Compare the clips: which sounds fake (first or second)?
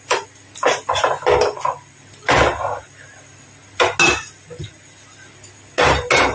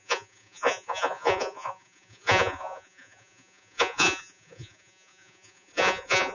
second